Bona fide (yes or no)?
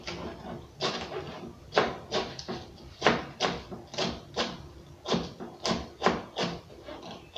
yes